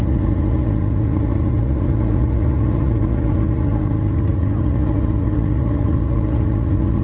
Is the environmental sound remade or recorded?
remade